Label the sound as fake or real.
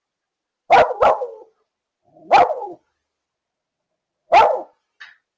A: real